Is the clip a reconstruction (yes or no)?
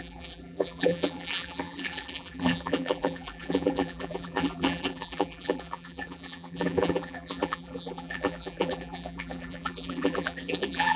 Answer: yes